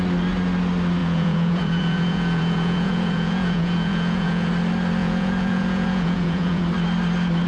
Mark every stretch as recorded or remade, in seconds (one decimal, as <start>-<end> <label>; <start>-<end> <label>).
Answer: 0.0-1.0 recorded; 1.0-4.5 remade; 4.5-5.0 recorded; 5.0-6.6 remade; 6.6-7.5 recorded